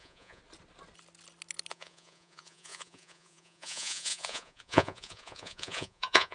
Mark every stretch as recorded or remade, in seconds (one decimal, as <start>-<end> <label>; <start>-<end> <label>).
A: 0.0-0.4 remade; 0.4-1.7 recorded; 1.7-6.3 remade